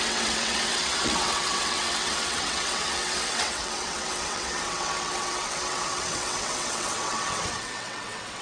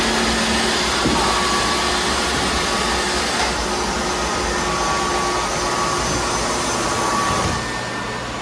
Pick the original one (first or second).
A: second